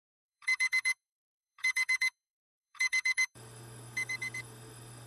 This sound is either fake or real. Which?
fake